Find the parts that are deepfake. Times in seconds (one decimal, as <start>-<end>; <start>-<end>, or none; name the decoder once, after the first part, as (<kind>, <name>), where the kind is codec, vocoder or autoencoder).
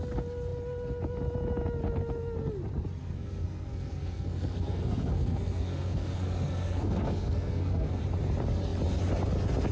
3.0-8.0 (codec, SNAC)